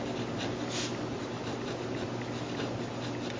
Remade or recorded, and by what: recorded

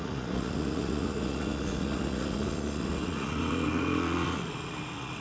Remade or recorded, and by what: remade, vocoder, Vocos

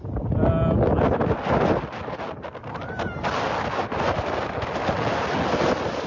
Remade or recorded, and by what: recorded